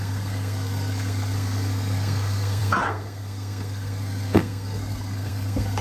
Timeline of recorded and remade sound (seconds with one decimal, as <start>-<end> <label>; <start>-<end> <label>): 0.0-5.8 remade